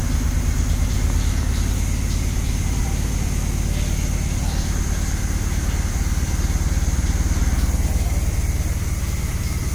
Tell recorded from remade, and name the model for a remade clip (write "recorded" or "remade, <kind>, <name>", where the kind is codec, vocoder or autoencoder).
remade, vocoder, BigVGAN v2